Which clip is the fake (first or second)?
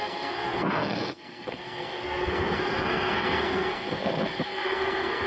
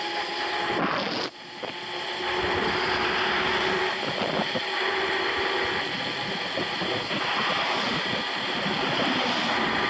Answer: first